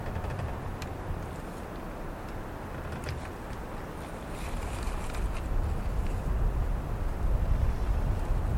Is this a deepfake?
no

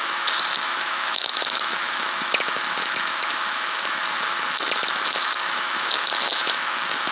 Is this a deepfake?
yes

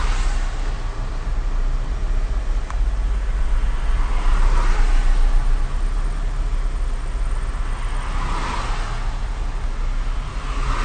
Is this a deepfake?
no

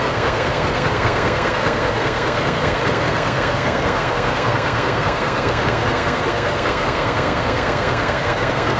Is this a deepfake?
yes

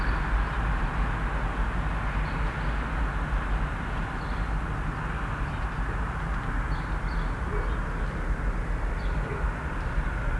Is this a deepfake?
no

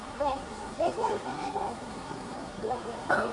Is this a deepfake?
yes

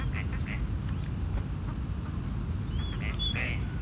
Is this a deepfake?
no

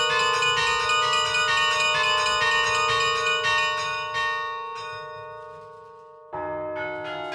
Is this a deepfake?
no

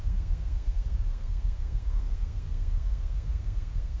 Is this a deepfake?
yes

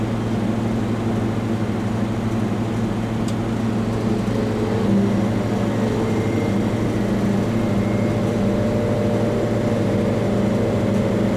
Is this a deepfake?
no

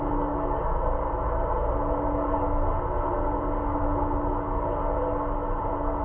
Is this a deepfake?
no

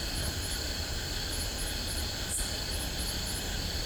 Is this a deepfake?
no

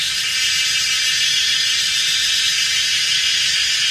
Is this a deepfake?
no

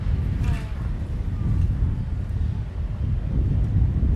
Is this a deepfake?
no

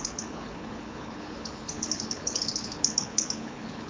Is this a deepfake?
yes